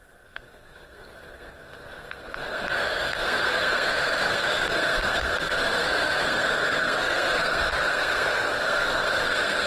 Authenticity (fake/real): fake